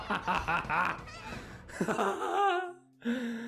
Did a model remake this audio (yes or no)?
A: no